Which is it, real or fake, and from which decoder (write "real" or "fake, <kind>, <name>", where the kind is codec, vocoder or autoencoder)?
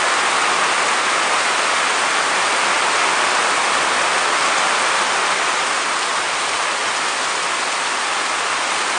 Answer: real